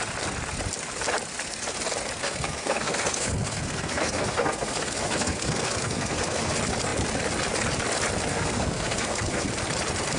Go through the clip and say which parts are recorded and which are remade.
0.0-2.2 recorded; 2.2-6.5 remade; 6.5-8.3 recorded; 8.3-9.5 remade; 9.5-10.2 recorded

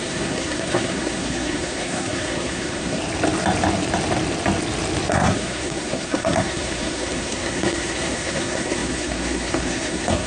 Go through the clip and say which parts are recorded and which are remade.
0.0-3.0 remade; 3.0-5.1 recorded; 5.1-10.3 remade

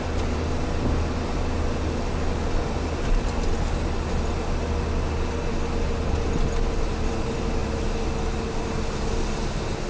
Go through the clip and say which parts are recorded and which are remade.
0.0-9.9 recorded

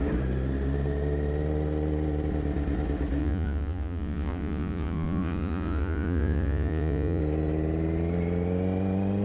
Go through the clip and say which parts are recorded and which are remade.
0.0-3.2 recorded; 3.2-7.2 remade; 7.2-9.2 recorded

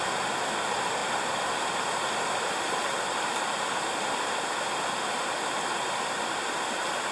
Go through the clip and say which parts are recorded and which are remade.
0.0-7.1 recorded

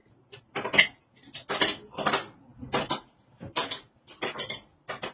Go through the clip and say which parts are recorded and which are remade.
0.0-1.0 remade; 1.0-5.1 recorded